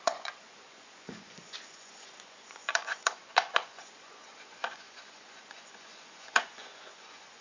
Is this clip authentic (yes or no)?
no